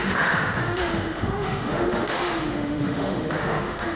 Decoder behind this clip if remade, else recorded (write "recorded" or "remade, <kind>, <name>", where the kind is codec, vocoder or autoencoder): remade, autoencoder, DAC-VAE